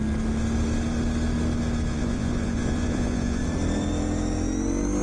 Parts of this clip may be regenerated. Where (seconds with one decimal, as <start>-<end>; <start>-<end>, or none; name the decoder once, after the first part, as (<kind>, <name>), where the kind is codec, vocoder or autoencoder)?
1.9-3.4 (vocoder, Vocos)